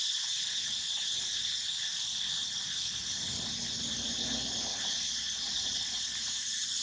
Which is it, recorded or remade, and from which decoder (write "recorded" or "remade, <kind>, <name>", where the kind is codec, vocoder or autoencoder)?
recorded